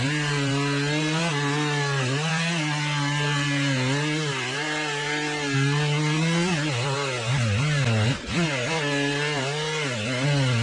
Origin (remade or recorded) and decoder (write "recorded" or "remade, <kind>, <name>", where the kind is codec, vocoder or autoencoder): recorded